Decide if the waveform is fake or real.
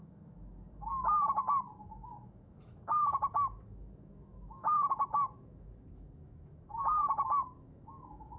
fake